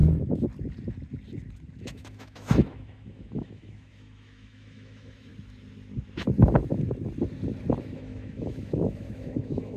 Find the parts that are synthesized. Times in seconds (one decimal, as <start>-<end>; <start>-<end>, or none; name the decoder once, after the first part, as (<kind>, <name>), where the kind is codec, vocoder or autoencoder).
1.8-5.3 (autoencoder, DAC-VAE); 7.8-9.8